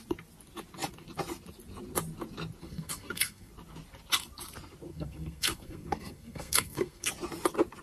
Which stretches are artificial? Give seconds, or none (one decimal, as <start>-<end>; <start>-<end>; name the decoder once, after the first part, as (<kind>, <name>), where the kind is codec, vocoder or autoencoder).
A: 2.6-3.5 (codec, SNAC); 4.9-7.1